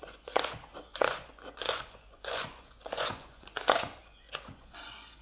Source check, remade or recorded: remade